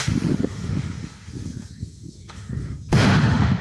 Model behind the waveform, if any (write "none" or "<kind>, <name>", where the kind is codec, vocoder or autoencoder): autoencoder, DAC-VAE